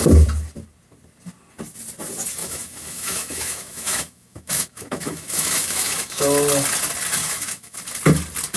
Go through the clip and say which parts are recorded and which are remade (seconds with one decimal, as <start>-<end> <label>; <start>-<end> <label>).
0.0-2.4 recorded; 2.4-6.2 remade; 6.2-7.2 recorded; 7.2-7.8 remade; 7.8-8.6 recorded